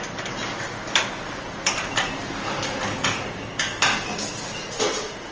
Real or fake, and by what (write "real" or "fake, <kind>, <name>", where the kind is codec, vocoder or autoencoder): real